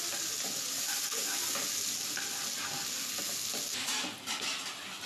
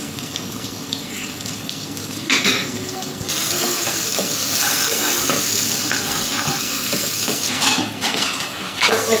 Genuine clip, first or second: first